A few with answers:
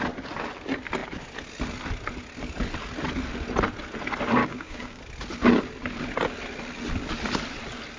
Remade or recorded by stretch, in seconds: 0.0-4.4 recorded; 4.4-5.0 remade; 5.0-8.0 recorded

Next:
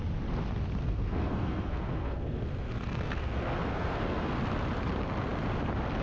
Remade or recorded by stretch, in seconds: 0.0-0.8 recorded; 0.8-4.4 remade; 4.4-6.0 recorded

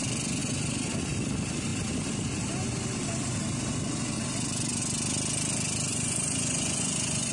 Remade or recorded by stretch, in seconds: 0.0-5.9 recorded; 5.9-7.3 remade

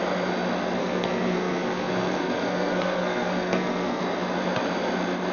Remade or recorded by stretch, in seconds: 0.0-0.8 recorded; 0.8-4.0 remade; 4.0-5.3 recorded